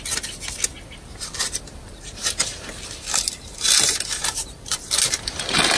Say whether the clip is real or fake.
real